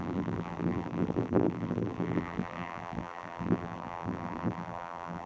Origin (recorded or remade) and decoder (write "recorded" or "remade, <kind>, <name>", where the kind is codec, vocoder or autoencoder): remade, vocoder, BigVGAN v2